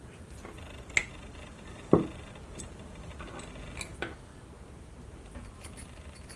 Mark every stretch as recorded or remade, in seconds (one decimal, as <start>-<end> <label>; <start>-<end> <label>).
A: 0.0-6.4 recorded